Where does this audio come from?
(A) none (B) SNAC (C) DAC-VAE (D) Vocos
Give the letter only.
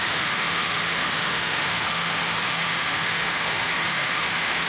C